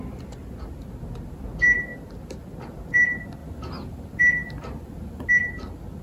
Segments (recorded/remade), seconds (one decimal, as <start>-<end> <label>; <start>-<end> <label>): 0.0-6.0 recorded